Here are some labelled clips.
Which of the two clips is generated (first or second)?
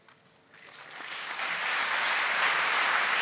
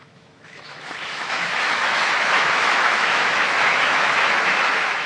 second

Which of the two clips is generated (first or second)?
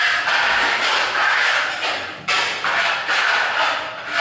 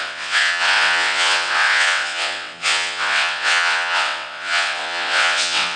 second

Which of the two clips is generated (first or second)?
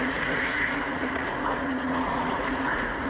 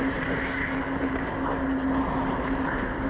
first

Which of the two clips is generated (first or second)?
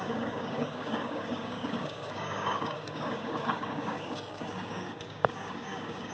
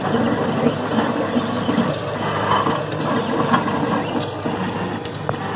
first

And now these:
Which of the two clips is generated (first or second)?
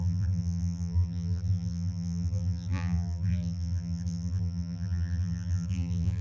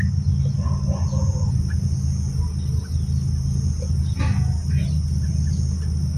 first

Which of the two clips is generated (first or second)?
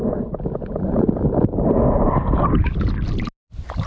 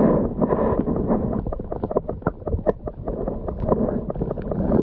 second